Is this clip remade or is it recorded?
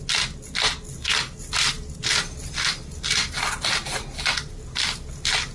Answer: recorded